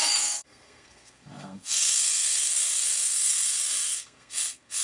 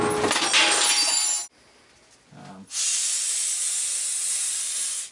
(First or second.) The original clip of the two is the second